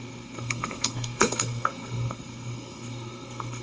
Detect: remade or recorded remade